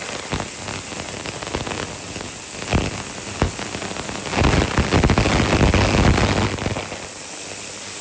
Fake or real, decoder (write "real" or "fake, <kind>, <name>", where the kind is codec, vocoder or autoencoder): real